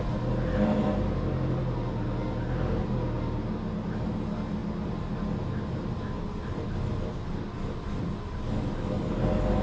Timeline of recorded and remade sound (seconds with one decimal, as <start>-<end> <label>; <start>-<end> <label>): 0.0-9.6 recorded